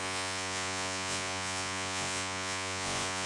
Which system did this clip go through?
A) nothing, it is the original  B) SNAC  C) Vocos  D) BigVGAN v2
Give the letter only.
C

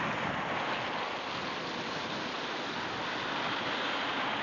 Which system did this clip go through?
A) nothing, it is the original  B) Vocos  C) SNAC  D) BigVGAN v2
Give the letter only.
A